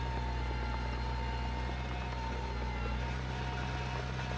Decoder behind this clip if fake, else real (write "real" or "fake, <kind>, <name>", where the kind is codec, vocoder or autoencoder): real